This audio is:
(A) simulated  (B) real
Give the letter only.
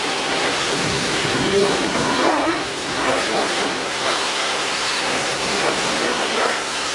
A